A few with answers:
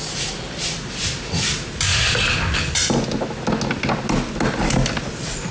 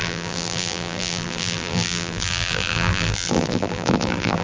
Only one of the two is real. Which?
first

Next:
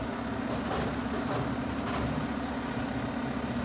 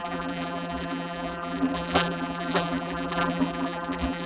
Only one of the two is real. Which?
first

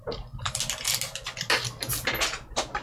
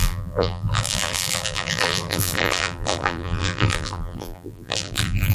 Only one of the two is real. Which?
first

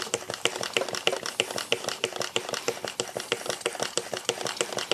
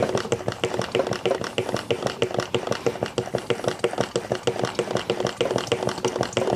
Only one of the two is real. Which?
second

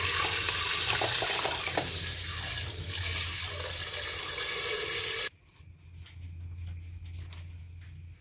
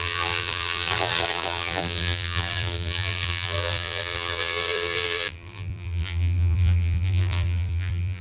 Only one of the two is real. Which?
first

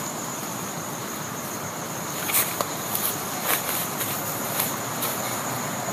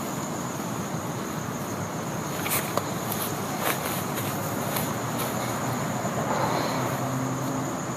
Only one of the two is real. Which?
second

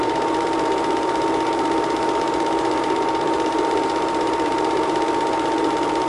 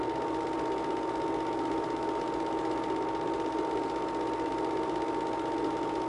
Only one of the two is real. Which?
second